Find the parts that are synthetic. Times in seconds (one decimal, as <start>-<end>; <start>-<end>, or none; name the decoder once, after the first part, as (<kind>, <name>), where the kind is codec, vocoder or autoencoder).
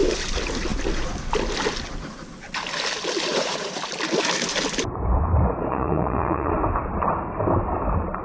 3.3-3.8 (vocoder, Vocos); 5.7-6.5